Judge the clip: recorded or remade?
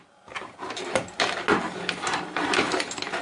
recorded